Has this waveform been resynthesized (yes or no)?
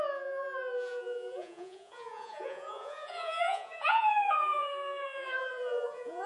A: yes